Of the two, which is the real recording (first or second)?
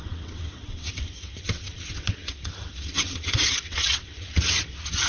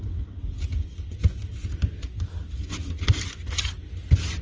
second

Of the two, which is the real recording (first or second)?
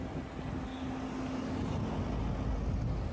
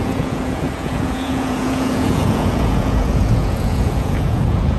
first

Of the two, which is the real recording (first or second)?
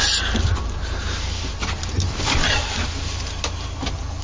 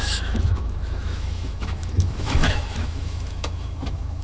first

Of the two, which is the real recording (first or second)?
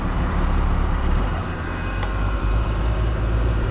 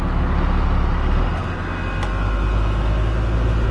second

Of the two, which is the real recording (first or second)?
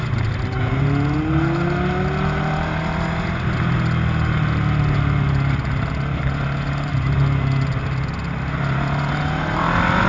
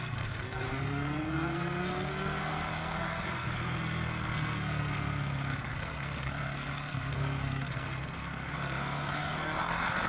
first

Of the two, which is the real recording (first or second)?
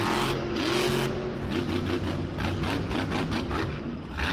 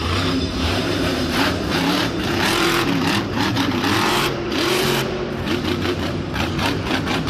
first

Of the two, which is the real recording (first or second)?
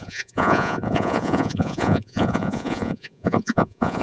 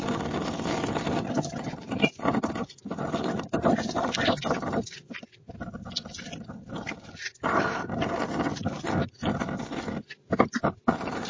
second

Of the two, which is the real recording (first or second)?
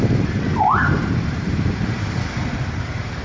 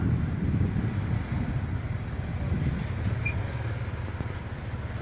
second